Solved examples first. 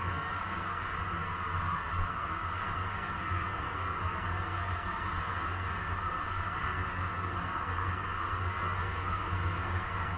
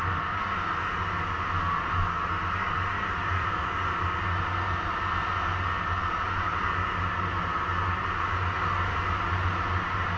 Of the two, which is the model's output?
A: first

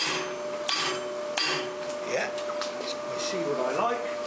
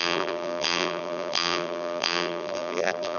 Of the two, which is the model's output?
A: second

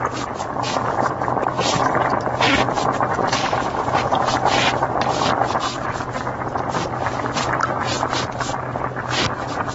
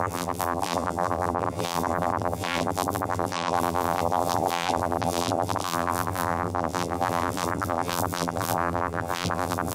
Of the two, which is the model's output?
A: second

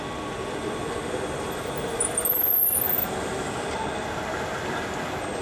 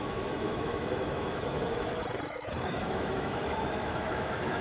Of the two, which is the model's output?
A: second